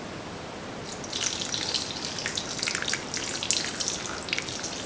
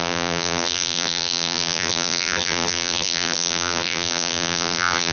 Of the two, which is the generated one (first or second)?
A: second